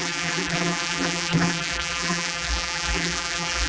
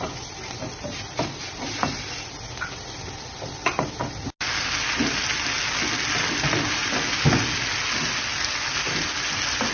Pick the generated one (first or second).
first